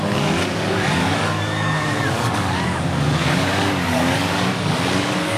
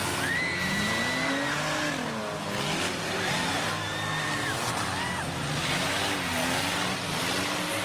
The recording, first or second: second